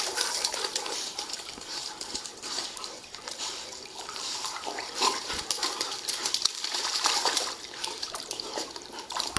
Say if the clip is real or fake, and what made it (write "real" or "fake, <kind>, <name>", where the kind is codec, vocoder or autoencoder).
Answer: fake, vocoder, BigVGAN v2